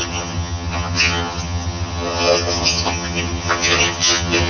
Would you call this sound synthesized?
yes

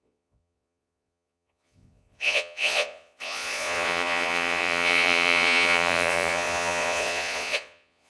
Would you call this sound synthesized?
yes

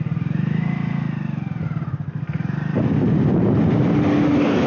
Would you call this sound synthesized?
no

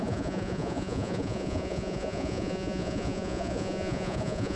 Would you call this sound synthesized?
yes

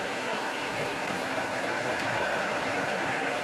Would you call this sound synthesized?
yes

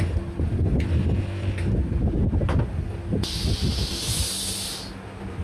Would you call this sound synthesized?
no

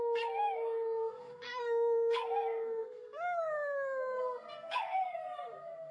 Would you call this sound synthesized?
yes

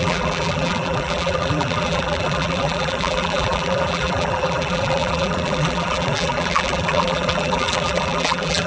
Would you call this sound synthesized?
yes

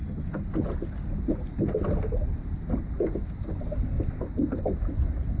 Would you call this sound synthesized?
no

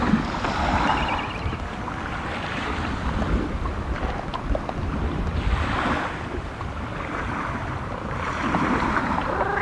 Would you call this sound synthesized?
yes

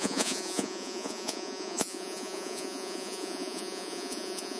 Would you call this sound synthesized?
yes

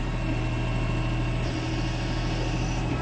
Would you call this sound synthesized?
no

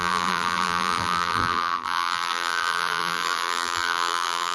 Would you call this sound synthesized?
yes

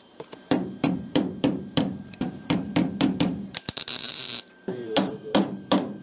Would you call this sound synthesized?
yes